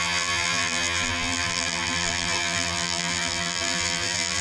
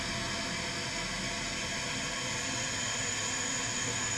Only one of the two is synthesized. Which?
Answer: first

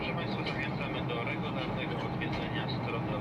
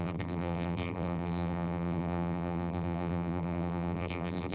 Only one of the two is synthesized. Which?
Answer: second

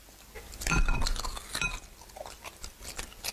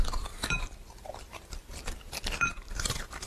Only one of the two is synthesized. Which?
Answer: second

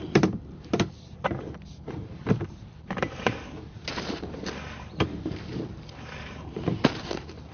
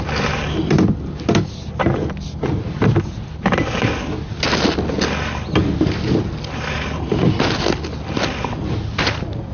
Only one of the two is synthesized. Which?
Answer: first